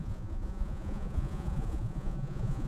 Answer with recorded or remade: remade